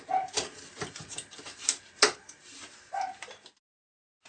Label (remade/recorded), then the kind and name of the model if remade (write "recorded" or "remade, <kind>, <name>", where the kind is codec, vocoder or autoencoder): recorded